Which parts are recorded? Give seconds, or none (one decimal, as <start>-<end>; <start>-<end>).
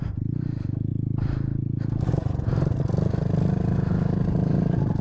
0.0-5.0